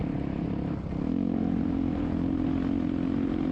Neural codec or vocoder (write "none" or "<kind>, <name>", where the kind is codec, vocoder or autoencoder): none